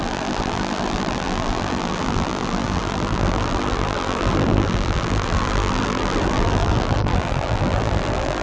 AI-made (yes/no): yes